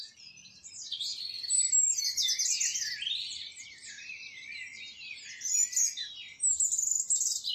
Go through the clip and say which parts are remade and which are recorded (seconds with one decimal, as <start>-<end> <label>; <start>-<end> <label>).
0.0-7.5 recorded